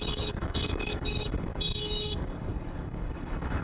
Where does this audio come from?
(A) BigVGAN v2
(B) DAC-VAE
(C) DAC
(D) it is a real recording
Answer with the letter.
C